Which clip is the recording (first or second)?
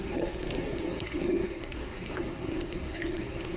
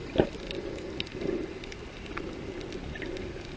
second